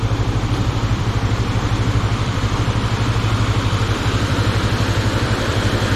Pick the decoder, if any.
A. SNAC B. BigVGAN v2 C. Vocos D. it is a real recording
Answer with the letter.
B